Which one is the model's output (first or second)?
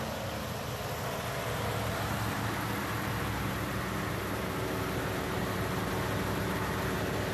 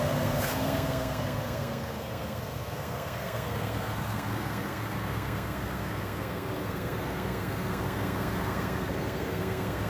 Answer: second